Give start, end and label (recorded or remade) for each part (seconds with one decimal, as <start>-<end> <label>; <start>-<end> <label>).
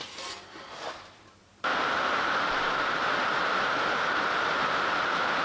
0.0-5.4 recorded